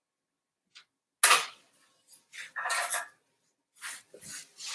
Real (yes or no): yes